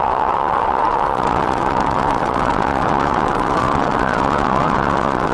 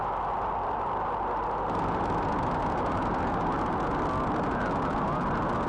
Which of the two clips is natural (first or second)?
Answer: second